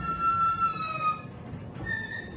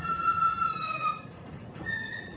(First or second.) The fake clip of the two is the second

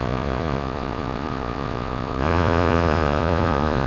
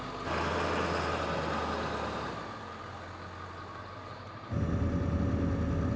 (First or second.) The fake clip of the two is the first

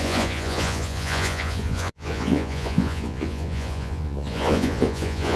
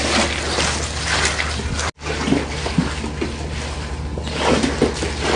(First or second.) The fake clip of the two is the first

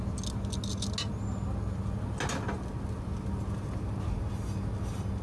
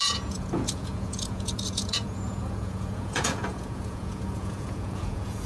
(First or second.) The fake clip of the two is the second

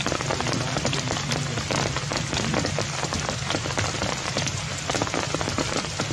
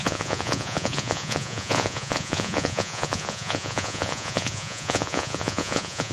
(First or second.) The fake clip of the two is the second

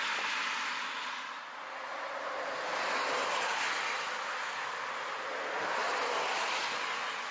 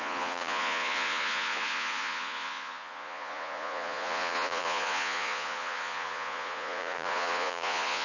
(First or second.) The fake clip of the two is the second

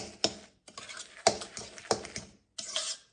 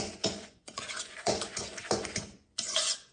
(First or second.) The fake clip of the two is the second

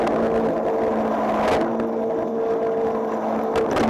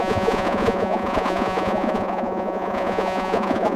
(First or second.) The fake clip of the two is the second